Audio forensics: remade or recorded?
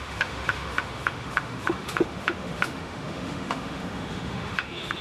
remade